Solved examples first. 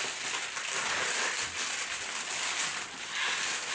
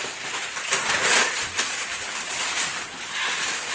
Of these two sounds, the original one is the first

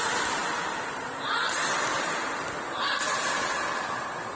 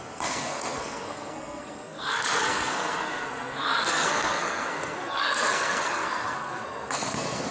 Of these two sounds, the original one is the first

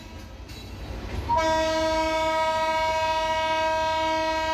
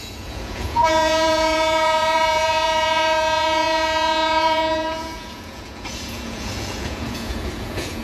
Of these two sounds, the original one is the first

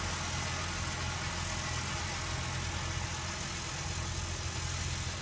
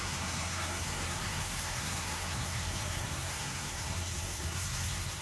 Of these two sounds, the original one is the first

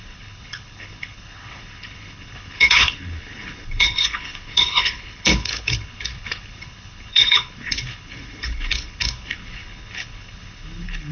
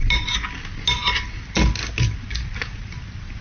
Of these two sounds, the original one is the second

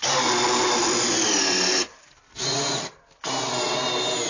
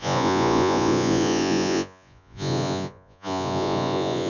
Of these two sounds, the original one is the first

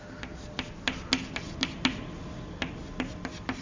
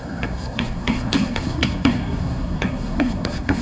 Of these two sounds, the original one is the first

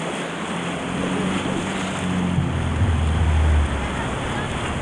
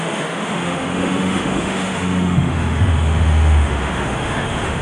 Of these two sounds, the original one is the first